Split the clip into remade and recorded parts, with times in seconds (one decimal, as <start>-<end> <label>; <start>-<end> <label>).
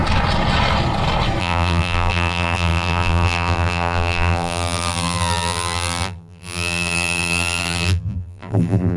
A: 0.0-1.4 recorded; 1.4-9.0 remade